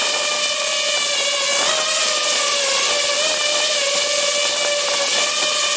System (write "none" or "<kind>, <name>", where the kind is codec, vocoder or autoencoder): none